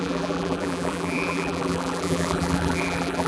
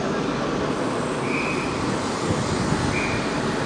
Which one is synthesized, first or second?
first